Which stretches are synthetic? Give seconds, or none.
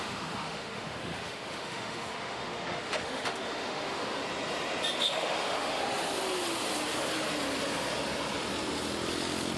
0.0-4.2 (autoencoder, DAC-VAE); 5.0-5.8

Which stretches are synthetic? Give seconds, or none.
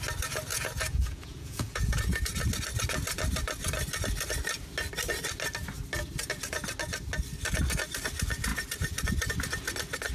0.5-2.2 (vocoder, Vocos)